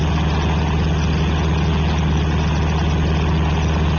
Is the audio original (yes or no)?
yes